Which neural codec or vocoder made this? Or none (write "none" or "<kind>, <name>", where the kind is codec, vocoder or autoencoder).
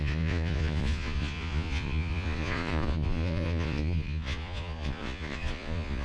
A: vocoder, Vocos